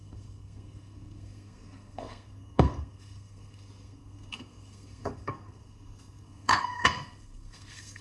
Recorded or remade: remade